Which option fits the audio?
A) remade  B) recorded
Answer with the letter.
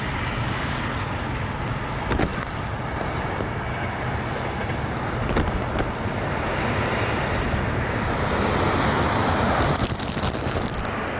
B